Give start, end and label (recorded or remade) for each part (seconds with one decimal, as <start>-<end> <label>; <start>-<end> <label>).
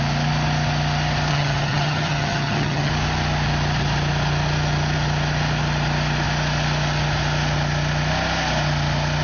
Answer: 0.0-1.3 recorded; 1.3-2.9 remade; 2.9-9.2 recorded